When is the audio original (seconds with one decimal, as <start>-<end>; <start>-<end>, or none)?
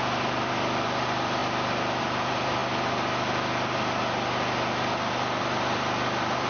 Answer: 1.4-2.0; 2.6-5.4